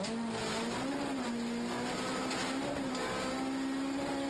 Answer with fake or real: real